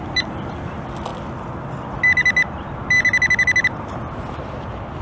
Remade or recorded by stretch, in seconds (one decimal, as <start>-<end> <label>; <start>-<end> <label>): 0.0-5.0 recorded